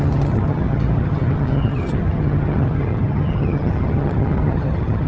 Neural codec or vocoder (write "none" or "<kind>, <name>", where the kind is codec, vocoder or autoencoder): vocoder, HiFi-GAN